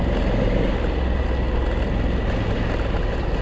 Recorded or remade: recorded